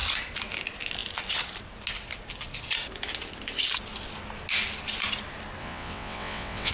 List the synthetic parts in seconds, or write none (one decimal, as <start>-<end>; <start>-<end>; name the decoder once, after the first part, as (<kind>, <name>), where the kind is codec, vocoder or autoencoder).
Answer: 5.6-6.7 (vocoder, WaveNeXt)